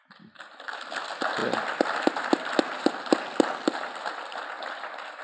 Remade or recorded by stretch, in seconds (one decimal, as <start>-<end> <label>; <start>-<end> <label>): 0.0-5.2 recorded